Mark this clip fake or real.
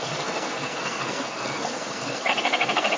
fake